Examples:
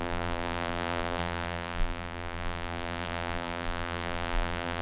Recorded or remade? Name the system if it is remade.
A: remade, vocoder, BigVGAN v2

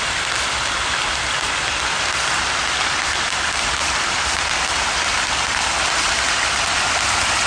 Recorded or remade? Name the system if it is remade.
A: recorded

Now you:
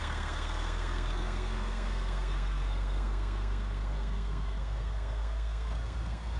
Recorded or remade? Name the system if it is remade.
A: remade, codec, SNAC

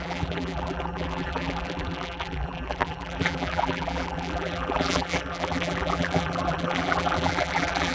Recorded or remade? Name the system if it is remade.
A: remade, vocoder, BigVGAN v2